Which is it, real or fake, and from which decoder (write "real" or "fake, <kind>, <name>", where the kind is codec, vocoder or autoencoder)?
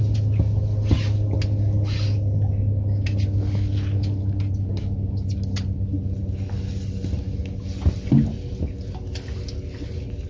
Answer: real